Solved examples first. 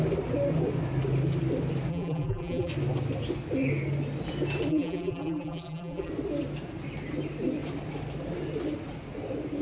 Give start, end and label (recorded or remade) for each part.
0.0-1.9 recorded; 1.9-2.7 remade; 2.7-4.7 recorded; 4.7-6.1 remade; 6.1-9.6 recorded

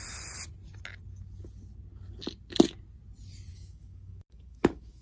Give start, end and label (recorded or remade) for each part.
0.0-3.5 recorded; 3.5-5.0 remade

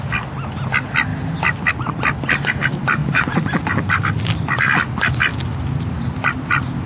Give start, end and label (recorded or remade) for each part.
0.0-3.0 recorded; 3.0-3.9 remade; 3.9-6.9 recorded

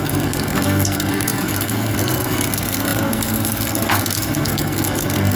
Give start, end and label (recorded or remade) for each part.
0.0-5.4 remade

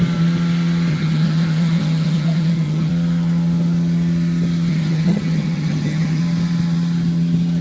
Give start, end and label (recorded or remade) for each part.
0.0-0.9 recorded; 0.9-2.9 remade; 2.9-4.7 recorded; 4.7-6.2 remade; 6.2-7.6 recorded

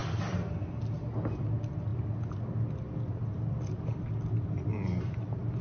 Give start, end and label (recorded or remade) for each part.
0.0-5.6 recorded

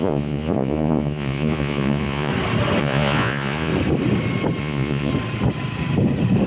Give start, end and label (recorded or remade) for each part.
0.0-2.3 remade; 2.3-2.8 recorded; 2.8-3.7 remade; 3.7-4.6 recorded; 4.6-5.1 remade; 5.1-6.5 recorded